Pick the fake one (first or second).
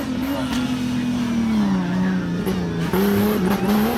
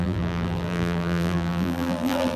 second